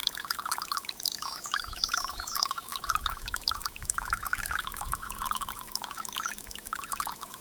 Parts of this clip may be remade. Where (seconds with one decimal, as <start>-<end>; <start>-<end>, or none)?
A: 0.0-7.4